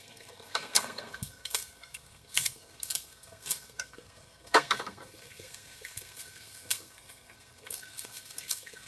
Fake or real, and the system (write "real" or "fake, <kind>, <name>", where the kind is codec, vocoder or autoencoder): fake, codec, SNAC